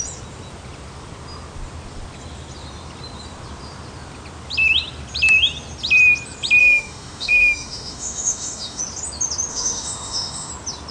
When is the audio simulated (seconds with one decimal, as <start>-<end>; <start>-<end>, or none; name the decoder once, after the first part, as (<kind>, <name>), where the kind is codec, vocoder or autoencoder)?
6.6-8.8 (autoencoder, DAC-VAE); 9.5-10.5